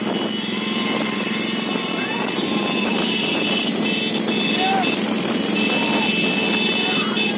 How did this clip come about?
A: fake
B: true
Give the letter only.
B